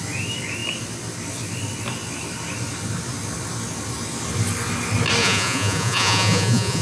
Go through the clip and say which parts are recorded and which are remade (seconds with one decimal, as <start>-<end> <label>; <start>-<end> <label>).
0.0-5.2 recorded; 5.2-6.8 remade